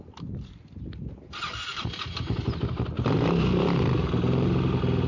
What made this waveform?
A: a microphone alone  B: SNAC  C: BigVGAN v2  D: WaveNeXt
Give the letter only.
A